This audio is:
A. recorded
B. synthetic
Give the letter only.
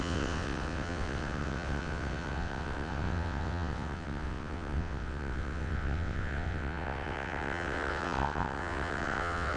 B